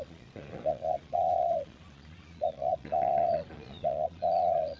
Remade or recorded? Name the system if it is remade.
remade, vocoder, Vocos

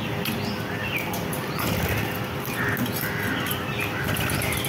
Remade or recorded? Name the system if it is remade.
recorded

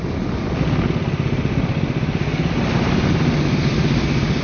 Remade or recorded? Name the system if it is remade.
recorded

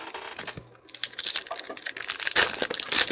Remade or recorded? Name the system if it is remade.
recorded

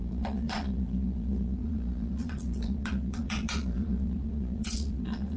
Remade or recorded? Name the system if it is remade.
remade, vocoder, Vocos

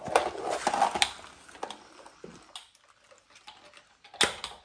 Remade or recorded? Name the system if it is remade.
recorded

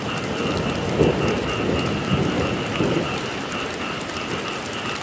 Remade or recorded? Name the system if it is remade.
recorded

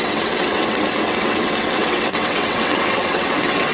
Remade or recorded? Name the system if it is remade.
remade, vocoder, WaveNeXt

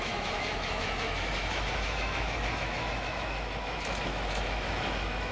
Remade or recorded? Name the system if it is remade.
remade, autoencoder, DAC-VAE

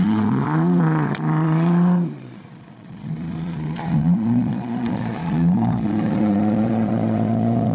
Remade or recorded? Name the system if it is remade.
remade, vocoder, Vocos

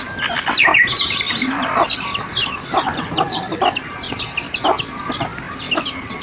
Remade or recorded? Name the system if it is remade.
recorded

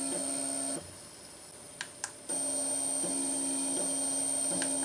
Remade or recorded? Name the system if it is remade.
recorded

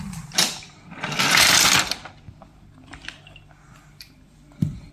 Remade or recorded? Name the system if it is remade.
recorded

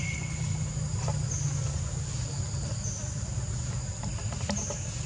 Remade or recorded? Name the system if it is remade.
recorded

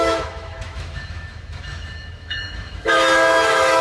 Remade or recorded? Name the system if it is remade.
remade, autoencoder, DAC-VAE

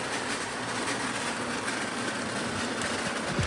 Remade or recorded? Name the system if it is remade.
recorded